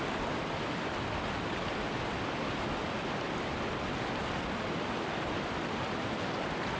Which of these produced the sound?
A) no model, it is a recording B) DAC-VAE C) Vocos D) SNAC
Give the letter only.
A